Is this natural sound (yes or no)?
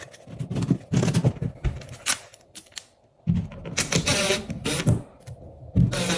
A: yes